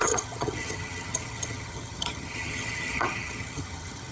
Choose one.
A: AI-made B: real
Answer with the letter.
A